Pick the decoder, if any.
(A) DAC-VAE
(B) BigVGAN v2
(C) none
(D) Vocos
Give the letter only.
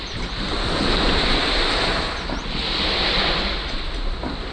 C